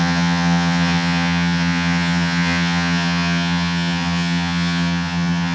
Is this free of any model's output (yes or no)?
no